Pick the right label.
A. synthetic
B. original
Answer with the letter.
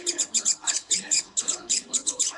A